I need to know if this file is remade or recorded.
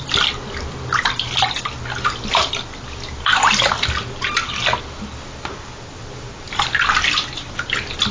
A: recorded